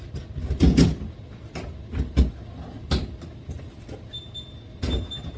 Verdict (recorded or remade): recorded